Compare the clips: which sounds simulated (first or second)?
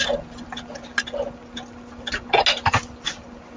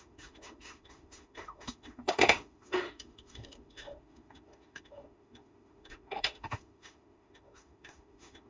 second